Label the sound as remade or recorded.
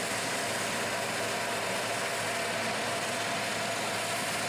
recorded